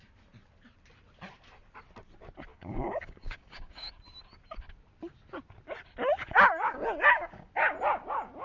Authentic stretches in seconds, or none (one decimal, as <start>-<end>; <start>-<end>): 0.0-2.5; 3.9-6.2; 7.5-8.4